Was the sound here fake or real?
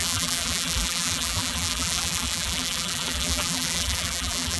fake